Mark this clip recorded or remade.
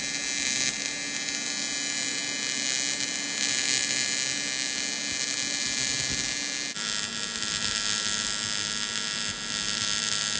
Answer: recorded